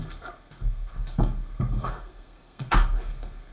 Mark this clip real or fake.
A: fake